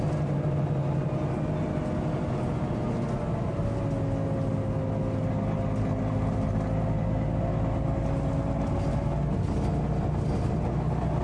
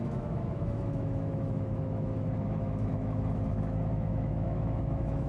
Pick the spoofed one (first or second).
second